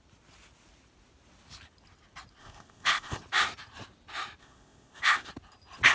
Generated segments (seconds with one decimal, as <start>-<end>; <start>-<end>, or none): 2.4-3.2; 4.4-5.3